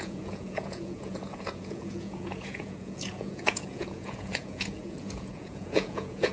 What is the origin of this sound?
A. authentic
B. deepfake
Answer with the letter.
B